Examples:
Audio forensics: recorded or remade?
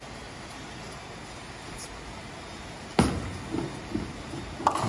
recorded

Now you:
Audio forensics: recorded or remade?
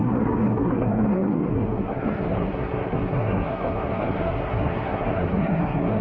remade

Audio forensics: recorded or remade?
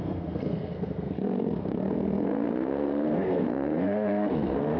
remade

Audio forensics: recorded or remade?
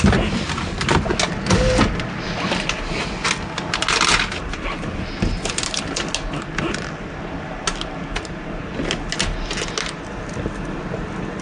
recorded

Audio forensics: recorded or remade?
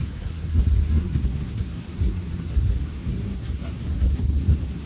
remade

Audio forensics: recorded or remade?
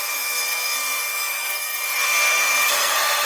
remade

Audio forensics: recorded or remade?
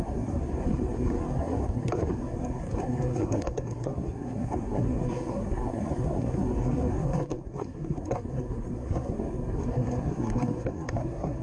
remade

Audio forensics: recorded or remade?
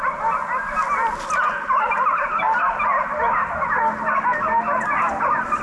recorded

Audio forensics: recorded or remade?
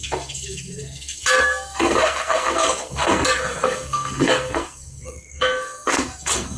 remade